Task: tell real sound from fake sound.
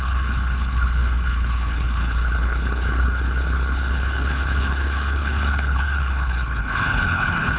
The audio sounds fake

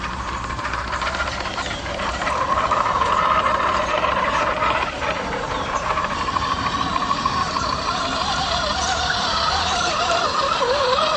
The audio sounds fake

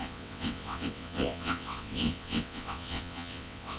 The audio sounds fake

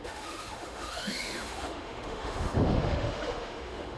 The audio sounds fake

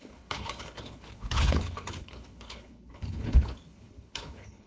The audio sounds fake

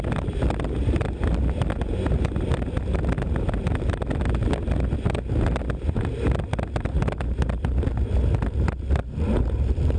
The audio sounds real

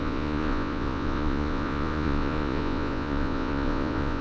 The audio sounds fake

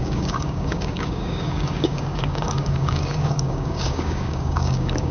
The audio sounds fake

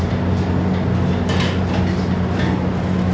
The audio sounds real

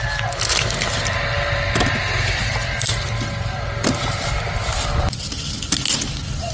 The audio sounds real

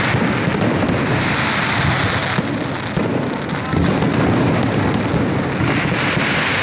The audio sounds real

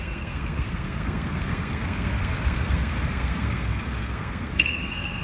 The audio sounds fake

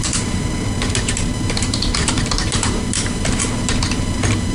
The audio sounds fake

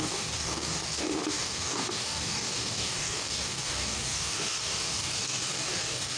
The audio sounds fake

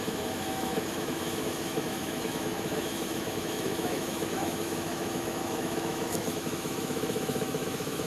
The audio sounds fake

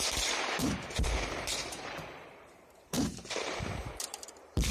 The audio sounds fake